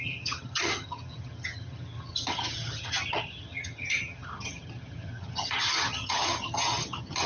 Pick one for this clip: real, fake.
fake